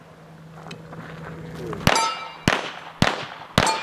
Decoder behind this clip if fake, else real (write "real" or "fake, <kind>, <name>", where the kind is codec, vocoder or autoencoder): real